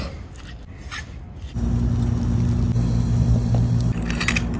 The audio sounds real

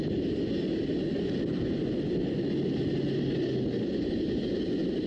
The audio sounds real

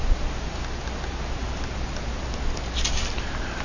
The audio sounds real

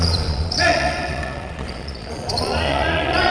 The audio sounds fake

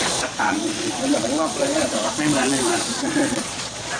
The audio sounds fake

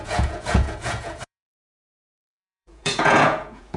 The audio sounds fake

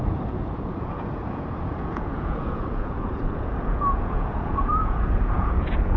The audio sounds fake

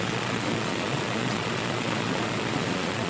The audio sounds fake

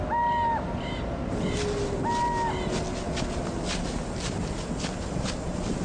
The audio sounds real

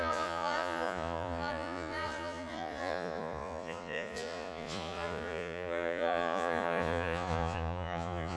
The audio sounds fake